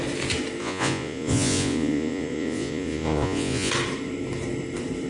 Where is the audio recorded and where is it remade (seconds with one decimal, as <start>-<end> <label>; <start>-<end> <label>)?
0.0-0.6 recorded; 0.6-3.7 remade; 3.7-5.1 recorded